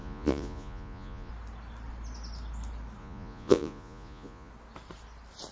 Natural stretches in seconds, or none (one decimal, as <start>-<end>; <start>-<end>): 1.3-3.0; 4.5-5.5